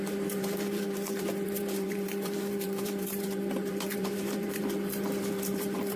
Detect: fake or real fake